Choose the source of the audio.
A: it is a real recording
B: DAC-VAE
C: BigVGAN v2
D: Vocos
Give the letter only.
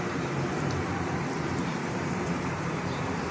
C